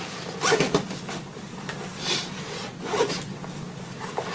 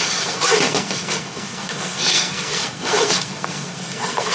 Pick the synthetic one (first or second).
second